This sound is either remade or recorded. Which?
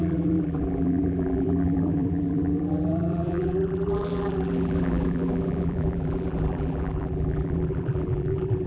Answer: remade